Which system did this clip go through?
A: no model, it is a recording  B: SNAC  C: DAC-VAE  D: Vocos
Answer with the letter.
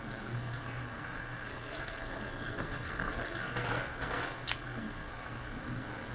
B